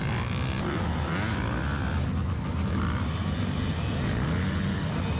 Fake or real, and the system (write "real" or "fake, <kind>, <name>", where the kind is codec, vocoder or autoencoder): real